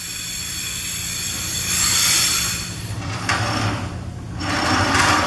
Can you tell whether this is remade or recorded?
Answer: remade